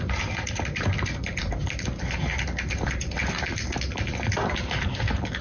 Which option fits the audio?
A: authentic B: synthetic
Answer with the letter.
A